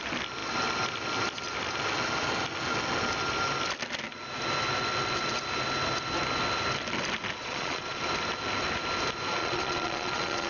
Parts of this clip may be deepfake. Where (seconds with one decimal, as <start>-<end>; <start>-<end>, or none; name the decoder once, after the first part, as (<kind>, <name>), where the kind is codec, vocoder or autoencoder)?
7.4-8.0 (vocoder, Vocos); 9.4-10.5